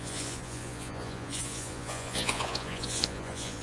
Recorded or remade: remade